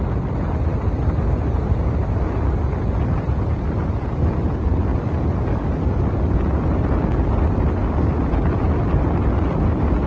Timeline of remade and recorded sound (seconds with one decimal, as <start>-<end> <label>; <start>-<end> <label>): 0.0-10.1 recorded